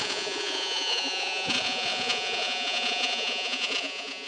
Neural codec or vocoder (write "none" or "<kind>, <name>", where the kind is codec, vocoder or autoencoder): vocoder, Vocos